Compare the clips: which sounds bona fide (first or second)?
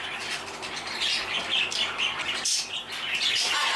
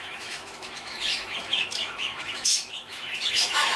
first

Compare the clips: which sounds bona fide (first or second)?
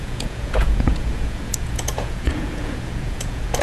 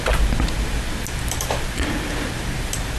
second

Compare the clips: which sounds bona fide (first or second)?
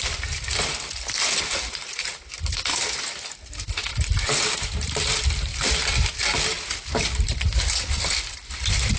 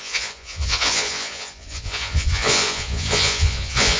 first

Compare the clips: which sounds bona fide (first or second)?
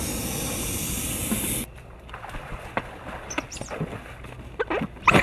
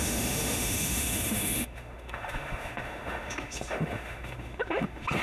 first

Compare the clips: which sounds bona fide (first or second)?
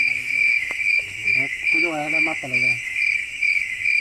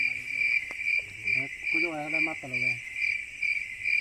second